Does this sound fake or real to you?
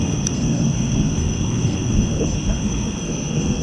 fake